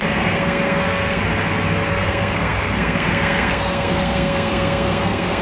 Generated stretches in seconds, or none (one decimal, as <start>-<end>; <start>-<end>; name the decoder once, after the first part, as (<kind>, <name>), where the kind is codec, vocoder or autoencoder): 0.0-1.2 (codec, SNAC); 1.9-5.4